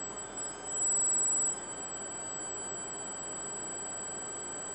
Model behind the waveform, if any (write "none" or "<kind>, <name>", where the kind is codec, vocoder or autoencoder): none